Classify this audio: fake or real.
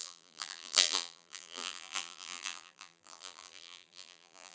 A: fake